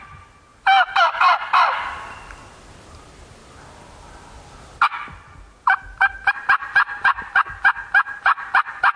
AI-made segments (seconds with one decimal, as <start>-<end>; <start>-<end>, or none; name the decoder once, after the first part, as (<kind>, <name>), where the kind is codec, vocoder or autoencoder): none